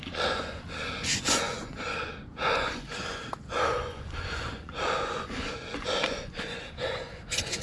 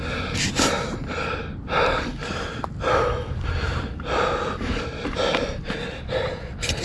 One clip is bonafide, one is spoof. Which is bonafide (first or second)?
second